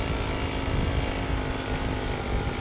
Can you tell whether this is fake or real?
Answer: real